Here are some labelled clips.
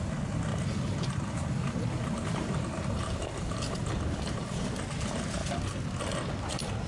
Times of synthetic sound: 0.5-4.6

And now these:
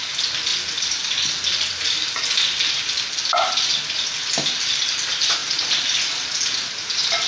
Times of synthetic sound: 0.5-3.7; 5.4-6.3